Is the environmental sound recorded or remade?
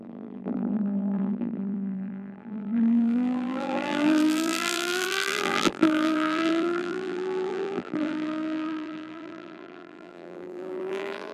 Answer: remade